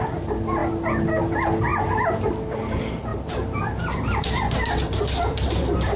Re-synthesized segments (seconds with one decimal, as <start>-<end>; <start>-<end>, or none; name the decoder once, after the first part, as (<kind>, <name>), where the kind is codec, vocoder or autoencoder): 1.7-2.3 (vocoder, BigVGAN v2); 3.1-6.0